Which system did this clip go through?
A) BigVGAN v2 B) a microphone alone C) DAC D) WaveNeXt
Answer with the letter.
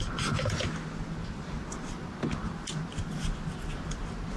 B